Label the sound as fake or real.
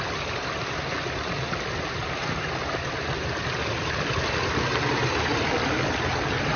real